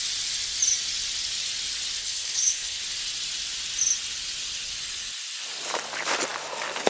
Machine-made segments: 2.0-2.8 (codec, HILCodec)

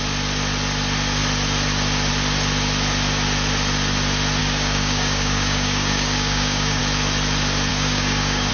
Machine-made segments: 4.4-6.8 (codec, DAC); 7.7-8.5

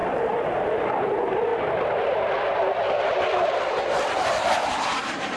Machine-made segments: 0.0-1.5 (vocoder, BigVGAN v2); 4.7-5.4